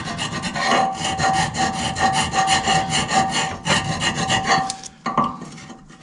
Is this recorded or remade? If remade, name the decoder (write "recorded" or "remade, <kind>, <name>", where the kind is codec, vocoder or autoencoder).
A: recorded